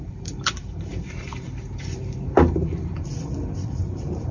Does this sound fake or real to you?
fake